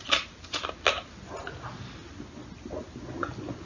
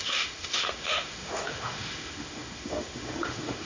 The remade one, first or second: second